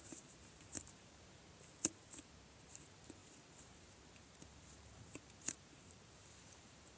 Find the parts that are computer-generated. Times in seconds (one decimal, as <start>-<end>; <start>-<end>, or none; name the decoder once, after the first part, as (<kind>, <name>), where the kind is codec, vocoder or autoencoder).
0.0-1.4 (vocoder, BigVGAN v2); 2.7-7.0